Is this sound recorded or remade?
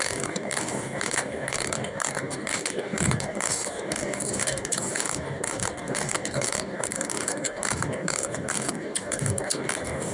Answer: remade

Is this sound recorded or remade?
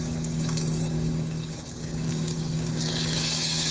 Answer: remade